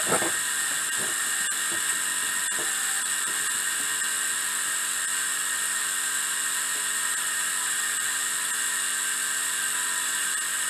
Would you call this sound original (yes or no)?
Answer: yes